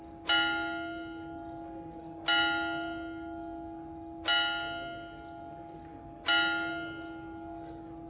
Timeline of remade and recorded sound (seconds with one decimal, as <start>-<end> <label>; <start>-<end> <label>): 0.0-8.1 recorded